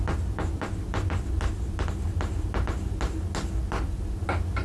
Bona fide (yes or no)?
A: yes